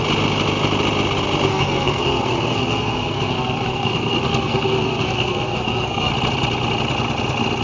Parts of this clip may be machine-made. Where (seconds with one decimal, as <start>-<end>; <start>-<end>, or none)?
1.5-6.1